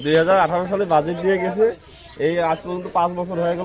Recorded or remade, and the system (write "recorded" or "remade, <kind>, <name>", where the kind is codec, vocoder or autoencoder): recorded